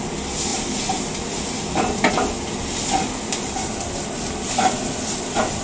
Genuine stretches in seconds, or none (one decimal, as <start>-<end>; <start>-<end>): 0.0-5.6